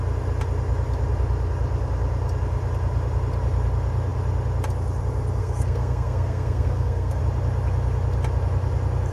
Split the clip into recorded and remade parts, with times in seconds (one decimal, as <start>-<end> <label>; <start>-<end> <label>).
0.0-5.4 recorded; 5.4-7.2 remade; 7.2-9.1 recorded

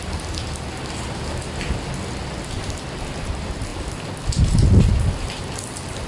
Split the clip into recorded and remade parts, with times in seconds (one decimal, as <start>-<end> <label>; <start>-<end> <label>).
0.0-6.1 recorded